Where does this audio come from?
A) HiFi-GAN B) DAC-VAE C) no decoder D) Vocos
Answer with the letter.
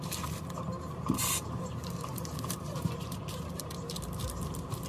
C